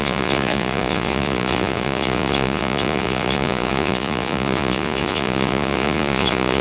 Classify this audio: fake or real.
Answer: fake